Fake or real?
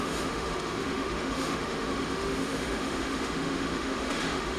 fake